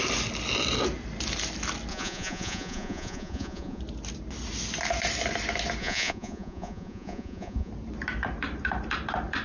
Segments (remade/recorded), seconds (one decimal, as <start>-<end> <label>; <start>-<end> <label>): 0.0-1.9 recorded; 1.9-3.8 remade; 3.8-5.8 recorded; 5.8-7.7 remade; 7.7-9.4 recorded